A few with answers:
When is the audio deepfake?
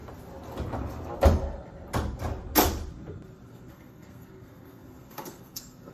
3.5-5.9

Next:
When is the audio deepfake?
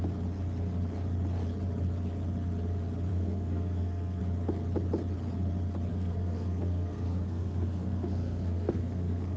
3.1-4.2; 5.9-9.4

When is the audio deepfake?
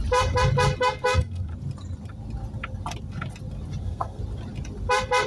0.8-1.5; 3.8-4.2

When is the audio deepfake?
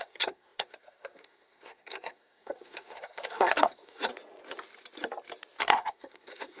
0.0-4.1; 5.6-6.6